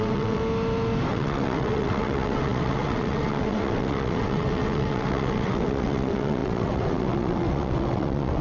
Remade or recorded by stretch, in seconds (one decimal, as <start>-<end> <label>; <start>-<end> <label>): 0.0-0.4 remade; 0.4-1.1 recorded; 1.1-8.4 remade